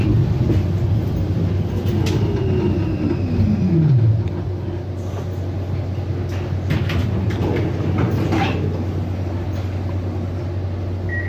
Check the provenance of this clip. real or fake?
real